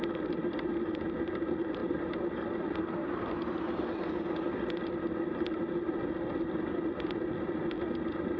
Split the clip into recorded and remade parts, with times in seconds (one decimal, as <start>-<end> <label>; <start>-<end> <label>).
0.0-8.4 recorded